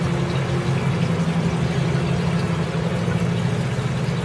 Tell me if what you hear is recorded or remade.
recorded